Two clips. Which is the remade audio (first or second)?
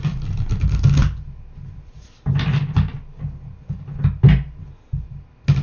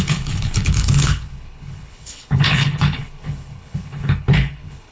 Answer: second